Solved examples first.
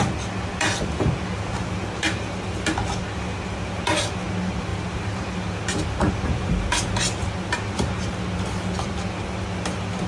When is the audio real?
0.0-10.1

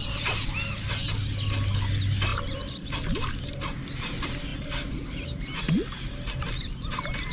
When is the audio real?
0.5-2.3; 3.4-7.3

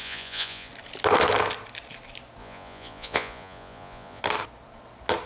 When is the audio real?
0.7-2.4; 4.2-5.3